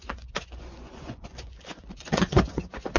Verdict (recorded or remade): remade